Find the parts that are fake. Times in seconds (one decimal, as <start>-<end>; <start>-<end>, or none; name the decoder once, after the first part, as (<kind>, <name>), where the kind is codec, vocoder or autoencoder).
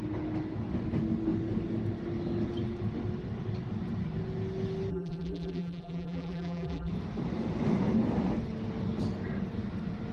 4.9-6.9 (vocoder, BigVGAN v2)